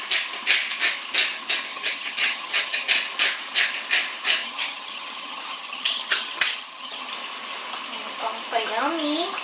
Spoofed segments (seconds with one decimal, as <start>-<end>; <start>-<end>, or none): 1.7-2.9; 4.4-7.1